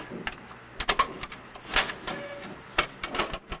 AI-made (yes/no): no